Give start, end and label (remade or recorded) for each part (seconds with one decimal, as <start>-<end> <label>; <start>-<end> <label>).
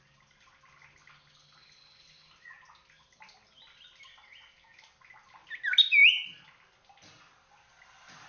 0.0-8.3 recorded